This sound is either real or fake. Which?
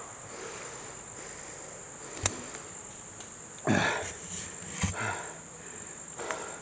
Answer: real